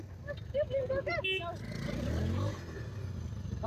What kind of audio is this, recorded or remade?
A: recorded